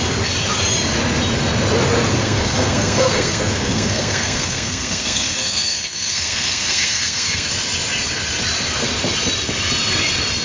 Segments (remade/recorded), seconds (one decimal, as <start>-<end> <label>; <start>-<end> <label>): 0.0-2.2 recorded; 2.2-7.5 remade; 7.5-10.4 recorded